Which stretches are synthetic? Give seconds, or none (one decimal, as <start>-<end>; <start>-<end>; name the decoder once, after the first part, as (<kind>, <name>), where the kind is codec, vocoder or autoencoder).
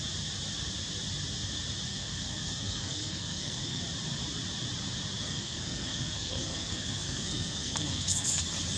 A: 1.9-3.8 (codec, SNAC); 5.2-8.4